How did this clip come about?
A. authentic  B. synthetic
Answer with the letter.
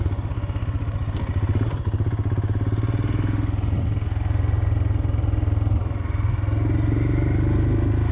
A